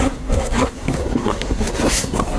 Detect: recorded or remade remade